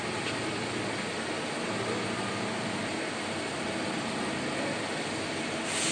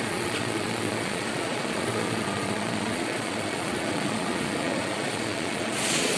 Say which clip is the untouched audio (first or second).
first